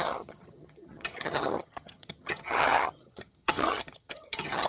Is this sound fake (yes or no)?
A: yes